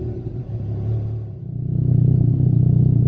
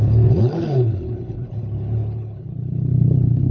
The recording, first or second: first